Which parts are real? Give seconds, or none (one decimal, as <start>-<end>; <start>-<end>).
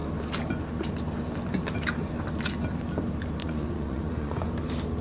0.0-3.4; 4.5-5.0